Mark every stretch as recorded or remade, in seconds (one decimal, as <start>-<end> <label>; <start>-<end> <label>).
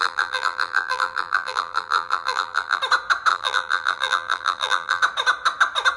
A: 0.0-2.8 remade; 2.8-3.3 recorded; 3.3-5.0 remade; 5.0-6.0 recorded